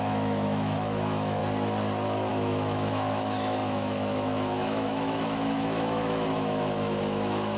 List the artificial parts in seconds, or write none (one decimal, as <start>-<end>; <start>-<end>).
0.0-1.4; 2.3-7.6